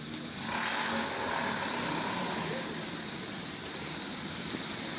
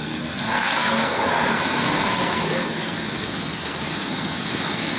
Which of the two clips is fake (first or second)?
second